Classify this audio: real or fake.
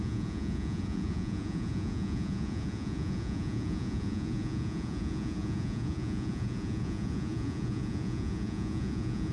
fake